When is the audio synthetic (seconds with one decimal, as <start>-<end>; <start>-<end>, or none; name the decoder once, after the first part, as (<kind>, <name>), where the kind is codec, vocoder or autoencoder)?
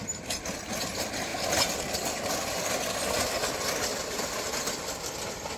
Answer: none